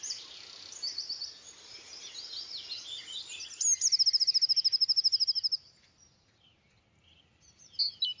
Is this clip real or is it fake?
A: real